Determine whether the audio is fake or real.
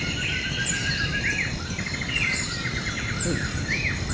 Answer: real